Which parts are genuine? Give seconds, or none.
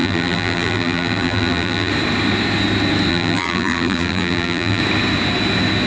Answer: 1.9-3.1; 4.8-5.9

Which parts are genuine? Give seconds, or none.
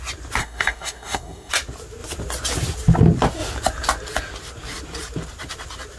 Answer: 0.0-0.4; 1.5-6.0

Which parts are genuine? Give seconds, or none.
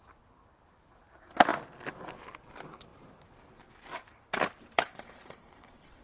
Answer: 0.0-2.9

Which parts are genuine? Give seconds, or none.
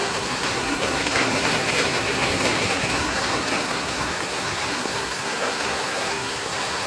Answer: none